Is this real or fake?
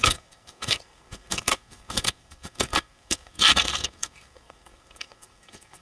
fake